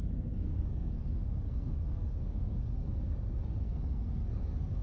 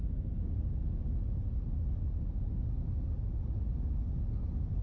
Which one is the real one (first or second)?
second